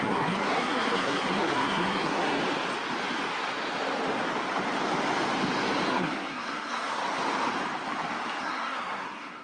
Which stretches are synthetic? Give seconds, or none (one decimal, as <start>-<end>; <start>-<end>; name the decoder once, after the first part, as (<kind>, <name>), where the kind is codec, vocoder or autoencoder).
0.0-2.4 (codec, SNAC); 5.9-7.0; 8.4-9.4